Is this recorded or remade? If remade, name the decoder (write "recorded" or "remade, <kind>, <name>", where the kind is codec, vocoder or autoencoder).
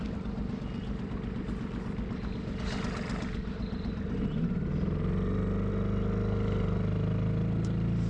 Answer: recorded